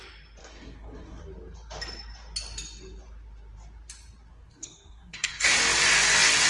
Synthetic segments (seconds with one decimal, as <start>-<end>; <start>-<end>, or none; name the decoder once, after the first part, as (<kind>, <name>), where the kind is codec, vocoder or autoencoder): 0.4-1.2 (codec, SNAC); 4.3-5.6